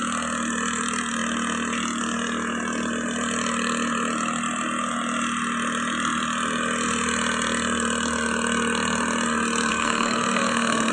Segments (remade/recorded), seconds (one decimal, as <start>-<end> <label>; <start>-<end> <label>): 0.0-9.7 recorded; 9.7-10.9 remade